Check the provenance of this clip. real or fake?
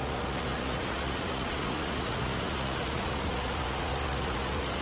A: fake